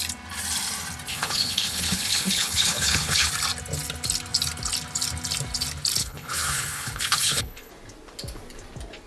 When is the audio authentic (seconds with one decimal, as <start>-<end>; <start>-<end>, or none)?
0.0-1.1; 3.3-6.0; 7.7-9.1